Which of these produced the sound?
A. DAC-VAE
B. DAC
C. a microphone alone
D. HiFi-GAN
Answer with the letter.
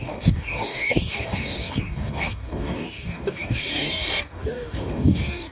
B